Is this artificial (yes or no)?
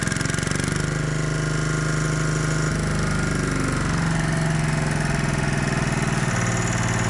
no